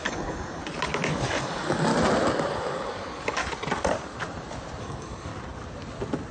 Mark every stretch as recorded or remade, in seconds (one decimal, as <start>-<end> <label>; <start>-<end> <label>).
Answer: 0.0-0.6 remade; 0.6-1.1 recorded; 1.1-1.9 remade; 1.9-2.5 recorded; 2.5-3.4 remade; 3.4-4.8 recorded; 4.8-5.3 remade; 5.3-6.3 recorded